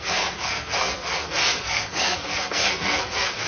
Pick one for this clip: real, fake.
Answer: fake